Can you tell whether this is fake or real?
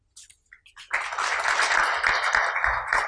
real